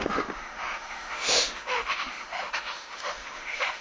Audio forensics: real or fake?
fake